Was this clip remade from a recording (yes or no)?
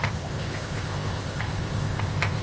yes